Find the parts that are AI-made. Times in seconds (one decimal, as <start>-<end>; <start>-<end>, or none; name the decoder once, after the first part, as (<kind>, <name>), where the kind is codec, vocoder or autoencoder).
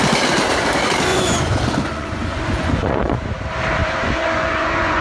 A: 1.1-3.3 (vocoder, Vocos); 3.8-5.0